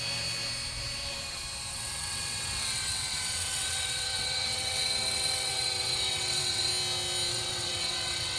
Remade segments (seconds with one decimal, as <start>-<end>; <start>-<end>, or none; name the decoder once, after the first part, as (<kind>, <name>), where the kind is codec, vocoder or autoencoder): 1.7-6.7 (vocoder, WaveNeXt); 7.3-8.4